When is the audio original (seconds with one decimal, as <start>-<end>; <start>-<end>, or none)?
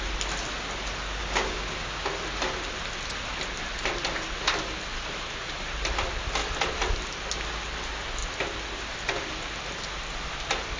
0.0-1.2; 2.1-10.8